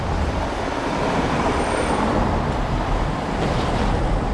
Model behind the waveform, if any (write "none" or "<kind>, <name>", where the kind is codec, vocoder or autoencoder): vocoder, BigVGAN v2